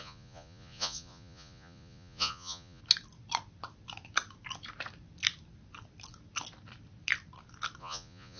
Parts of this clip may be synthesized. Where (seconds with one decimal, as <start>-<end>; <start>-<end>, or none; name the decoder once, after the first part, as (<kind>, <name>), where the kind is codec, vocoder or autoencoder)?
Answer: 0.0-2.8 (vocoder, Vocos); 7.8-8.4